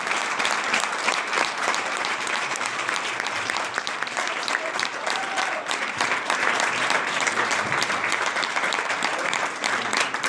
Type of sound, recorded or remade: remade